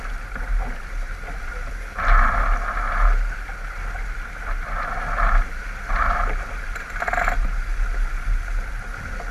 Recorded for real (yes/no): yes